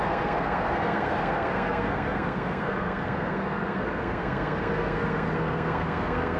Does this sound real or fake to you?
fake